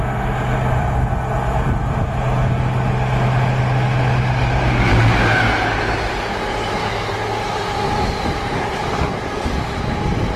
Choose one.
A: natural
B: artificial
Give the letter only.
A